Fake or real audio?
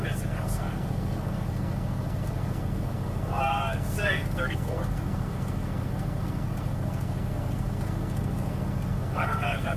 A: fake